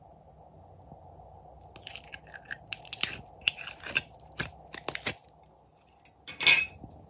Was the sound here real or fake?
real